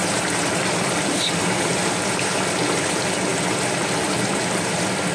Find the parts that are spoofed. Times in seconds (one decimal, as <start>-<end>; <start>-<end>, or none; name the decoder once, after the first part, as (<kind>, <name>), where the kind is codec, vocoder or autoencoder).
0.0-0.5 (vocoder, BigVGAN v2)